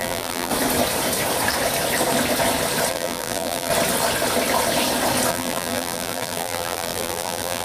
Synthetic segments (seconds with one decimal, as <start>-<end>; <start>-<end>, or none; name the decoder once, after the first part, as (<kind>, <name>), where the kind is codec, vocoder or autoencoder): 0.0-0.5 (vocoder, BigVGAN v2); 2.9-3.7; 5.3-7.6